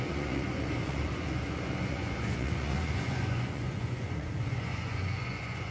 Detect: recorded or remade remade